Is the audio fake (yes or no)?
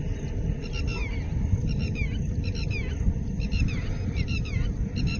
no